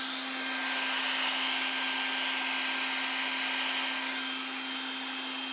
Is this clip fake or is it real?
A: real